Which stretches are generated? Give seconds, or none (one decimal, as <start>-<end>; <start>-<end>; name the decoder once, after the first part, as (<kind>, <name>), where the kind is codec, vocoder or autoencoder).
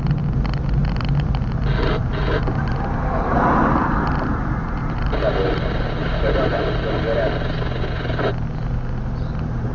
6.0-6.7 (vocoder, BigVGAN v2)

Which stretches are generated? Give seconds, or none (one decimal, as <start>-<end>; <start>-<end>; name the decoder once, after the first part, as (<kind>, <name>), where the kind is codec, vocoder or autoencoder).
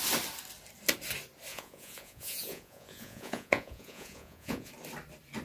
1.5-4.7 (vocoder, Vocos)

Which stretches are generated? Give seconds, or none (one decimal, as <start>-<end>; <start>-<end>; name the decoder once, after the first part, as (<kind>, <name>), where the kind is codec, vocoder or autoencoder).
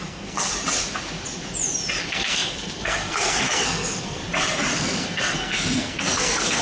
0.0-0.5 (codec, SNAC); 2.0-4.2; 4.7-6.6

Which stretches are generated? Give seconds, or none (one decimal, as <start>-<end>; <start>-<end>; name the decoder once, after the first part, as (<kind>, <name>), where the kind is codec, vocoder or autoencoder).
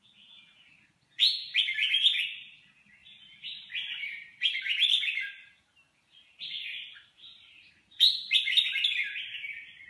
3.0-7.7 (vocoder, BigVGAN v2)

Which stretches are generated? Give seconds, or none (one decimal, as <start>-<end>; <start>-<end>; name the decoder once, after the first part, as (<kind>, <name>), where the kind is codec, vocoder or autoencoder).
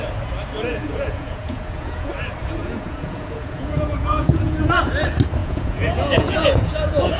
0.7-2.1 (vocoder, Vocos); 2.6-4.7; 5.4-7.2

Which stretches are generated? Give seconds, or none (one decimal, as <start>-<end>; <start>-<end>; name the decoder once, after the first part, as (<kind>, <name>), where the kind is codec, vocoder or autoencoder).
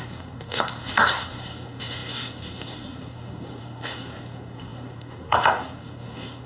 0.0-6.5 (codec, SNAC)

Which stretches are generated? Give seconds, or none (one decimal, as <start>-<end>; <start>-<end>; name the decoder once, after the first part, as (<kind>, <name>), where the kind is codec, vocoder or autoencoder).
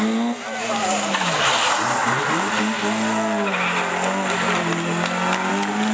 none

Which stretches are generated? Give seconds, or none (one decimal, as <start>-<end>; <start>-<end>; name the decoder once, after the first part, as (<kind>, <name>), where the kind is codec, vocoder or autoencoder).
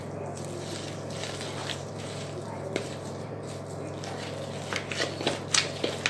1.6-3.5 (vocoder, BigVGAN v2)